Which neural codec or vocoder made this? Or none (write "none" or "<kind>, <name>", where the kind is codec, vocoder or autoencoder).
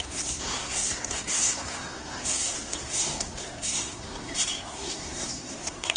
codec, SNAC